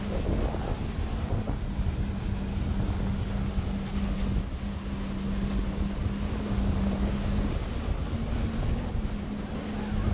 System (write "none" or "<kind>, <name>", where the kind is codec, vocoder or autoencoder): none